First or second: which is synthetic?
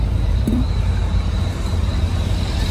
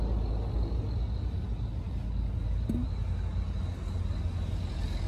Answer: first